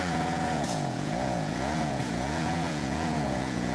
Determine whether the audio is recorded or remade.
remade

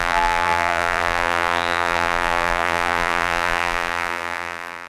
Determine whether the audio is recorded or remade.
remade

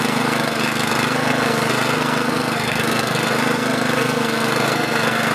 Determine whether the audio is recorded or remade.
remade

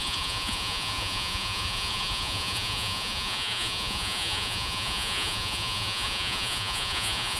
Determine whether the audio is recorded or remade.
remade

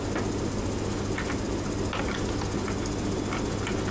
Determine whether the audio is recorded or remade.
recorded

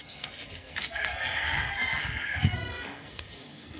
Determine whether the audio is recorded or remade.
remade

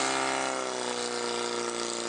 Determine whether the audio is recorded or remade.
recorded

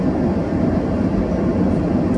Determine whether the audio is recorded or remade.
recorded